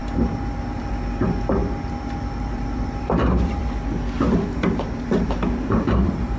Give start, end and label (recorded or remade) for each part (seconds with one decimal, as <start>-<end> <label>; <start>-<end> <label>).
0.0-0.8 recorded; 0.8-1.6 remade; 1.6-2.4 recorded; 2.4-3.6 remade; 3.6-4.3 recorded; 4.3-6.4 remade